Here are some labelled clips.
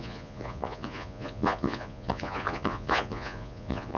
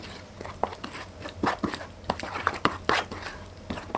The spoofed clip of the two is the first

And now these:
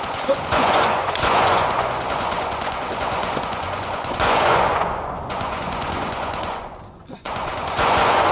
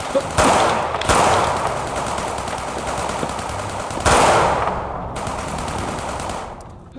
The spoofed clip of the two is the first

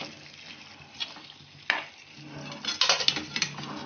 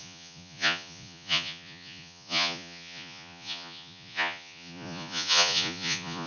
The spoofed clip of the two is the second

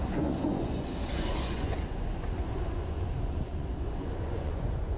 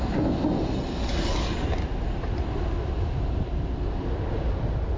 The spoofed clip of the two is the first